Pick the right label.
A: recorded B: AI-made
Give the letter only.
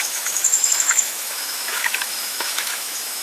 B